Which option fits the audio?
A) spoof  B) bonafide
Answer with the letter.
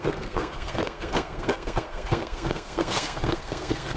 A